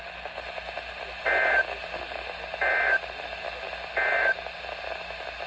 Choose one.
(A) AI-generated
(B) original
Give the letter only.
B